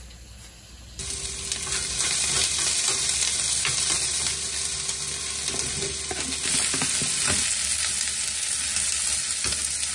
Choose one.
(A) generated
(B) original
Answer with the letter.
B